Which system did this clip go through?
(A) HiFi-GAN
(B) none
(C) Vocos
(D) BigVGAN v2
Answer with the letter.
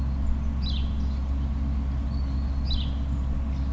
B